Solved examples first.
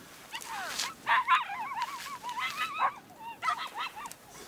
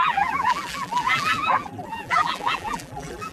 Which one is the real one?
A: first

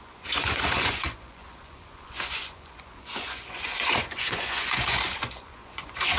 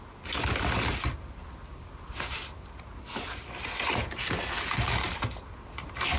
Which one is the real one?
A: second